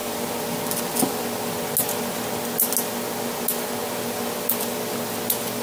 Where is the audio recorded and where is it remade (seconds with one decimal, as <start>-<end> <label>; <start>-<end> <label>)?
0.0-5.6 recorded